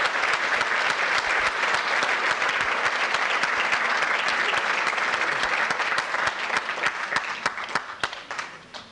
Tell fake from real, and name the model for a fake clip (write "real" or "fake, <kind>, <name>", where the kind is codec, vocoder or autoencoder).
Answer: real